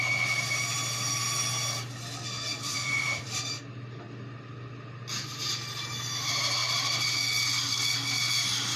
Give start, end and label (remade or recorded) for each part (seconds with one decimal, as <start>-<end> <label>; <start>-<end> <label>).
0.0-2.5 recorded; 2.5-3.3 remade; 3.3-8.8 recorded